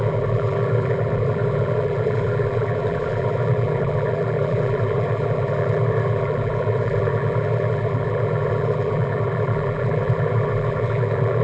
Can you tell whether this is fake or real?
fake